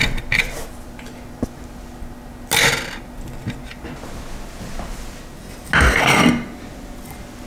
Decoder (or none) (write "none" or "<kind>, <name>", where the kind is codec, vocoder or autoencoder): none